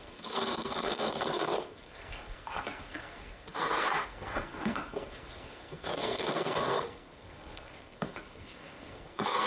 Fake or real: fake